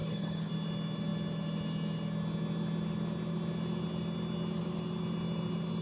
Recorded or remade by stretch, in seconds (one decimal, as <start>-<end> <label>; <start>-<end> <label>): 0.0-0.5 remade; 0.5-5.8 recorded